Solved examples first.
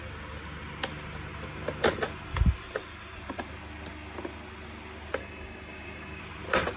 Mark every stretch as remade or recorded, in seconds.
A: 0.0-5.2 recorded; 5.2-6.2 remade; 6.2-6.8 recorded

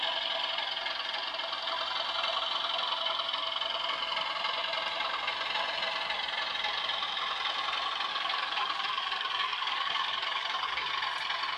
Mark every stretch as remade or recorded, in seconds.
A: 0.0-8.1 recorded; 8.1-10.9 remade; 10.9-11.6 recorded